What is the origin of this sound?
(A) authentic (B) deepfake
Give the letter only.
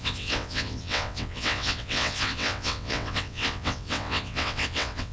B